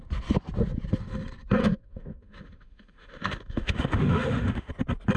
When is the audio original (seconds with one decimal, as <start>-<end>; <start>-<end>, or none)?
0.0-1.6; 4.7-5.2